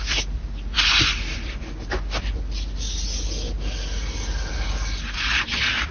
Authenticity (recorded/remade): recorded